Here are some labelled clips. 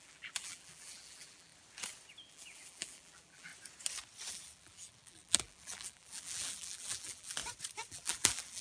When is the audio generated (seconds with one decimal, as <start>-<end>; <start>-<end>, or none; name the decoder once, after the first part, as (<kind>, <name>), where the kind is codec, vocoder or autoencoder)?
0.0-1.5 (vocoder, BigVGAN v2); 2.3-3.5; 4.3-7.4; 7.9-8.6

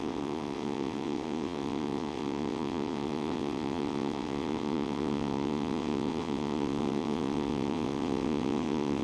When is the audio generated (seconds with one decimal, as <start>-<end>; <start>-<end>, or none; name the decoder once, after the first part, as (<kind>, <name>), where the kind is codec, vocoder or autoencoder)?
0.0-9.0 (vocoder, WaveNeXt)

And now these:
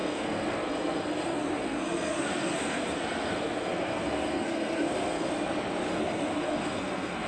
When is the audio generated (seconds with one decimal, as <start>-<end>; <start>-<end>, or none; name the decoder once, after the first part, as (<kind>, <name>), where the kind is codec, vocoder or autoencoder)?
0.0-5.3 (codec, SNAC); 5.9-7.3

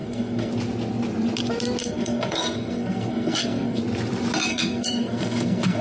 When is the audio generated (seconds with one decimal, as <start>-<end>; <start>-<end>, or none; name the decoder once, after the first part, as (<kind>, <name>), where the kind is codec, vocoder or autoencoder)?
0.0-0.5 (codec, SNAC); 1.8-3.8; 4.5-5.8

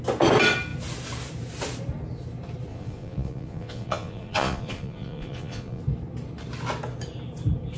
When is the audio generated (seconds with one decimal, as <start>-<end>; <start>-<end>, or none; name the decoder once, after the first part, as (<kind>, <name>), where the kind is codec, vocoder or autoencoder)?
2.7-5.8 (vocoder, Vocos)

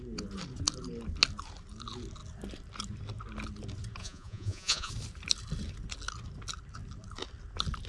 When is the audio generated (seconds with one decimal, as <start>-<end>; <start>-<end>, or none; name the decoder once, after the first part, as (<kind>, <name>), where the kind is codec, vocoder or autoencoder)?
4.0-4.9 (vocoder, Vocos)